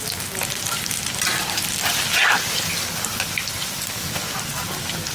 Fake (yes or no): no